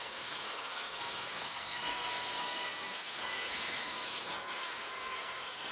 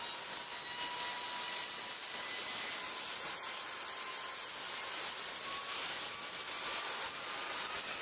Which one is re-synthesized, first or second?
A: first